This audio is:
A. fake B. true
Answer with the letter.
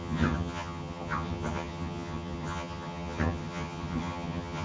A